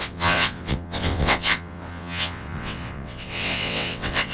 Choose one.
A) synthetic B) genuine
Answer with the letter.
A